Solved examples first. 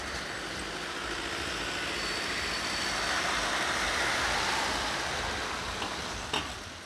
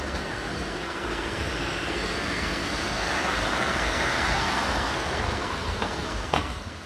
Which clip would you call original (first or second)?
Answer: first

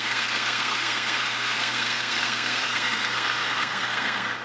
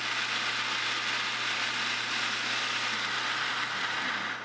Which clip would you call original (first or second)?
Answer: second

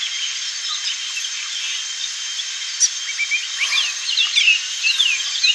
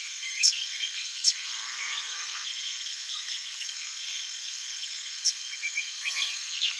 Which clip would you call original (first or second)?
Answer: first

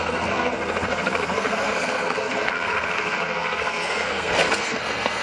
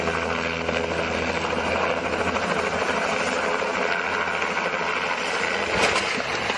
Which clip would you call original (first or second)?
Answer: second